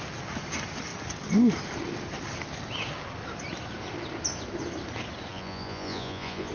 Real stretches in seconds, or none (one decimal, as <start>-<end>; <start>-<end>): 0.0-5.3